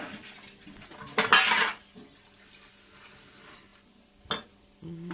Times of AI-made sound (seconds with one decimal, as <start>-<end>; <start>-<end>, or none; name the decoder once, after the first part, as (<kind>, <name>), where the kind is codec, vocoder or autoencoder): none